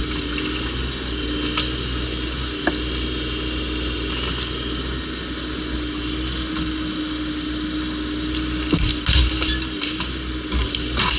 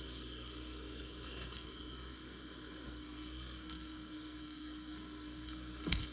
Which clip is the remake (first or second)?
second